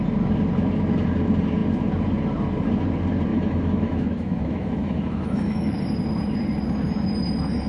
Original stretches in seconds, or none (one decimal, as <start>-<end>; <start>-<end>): 0.0-3.3; 5.8-7.7